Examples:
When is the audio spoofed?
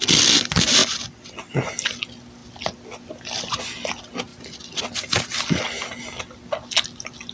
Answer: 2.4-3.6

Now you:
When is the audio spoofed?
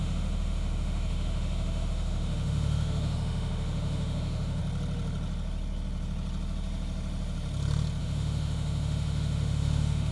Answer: 0.0-4.6; 8.0-10.1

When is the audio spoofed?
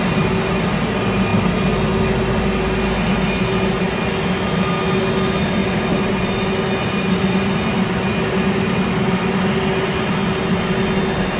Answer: none